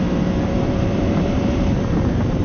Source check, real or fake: fake